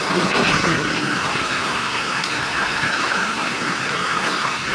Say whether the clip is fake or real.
fake